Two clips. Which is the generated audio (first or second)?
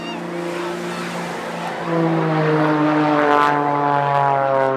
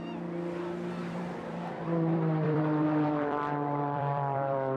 second